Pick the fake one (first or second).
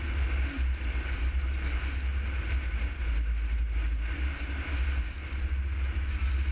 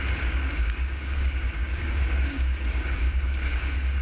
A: second